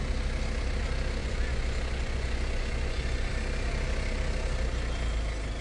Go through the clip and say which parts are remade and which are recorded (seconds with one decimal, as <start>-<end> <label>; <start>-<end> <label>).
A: 0.0-1.2 recorded; 1.2-3.3 remade; 3.3-5.6 recorded